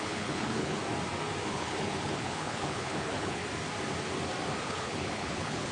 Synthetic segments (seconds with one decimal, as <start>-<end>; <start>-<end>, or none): 0.0-0.8; 1.5-3.4; 4.6-5.7